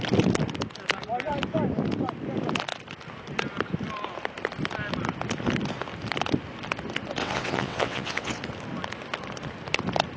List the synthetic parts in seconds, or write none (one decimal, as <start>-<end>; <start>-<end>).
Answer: 7.2-8.4